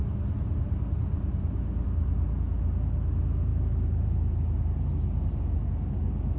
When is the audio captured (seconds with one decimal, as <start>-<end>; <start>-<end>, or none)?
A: 0.0-6.4